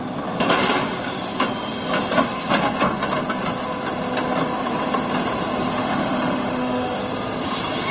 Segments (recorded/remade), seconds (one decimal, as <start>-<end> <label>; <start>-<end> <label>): 0.0-5.7 recorded; 5.7-7.0 remade; 7.0-7.9 recorded